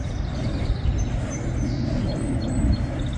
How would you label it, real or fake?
fake